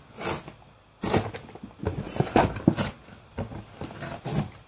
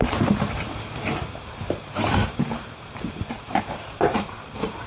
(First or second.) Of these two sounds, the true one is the first